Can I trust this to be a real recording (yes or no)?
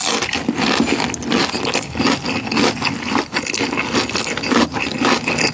yes